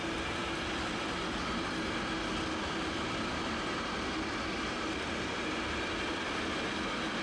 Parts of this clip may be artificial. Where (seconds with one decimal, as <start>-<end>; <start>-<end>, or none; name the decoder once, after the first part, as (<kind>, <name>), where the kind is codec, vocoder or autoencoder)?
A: none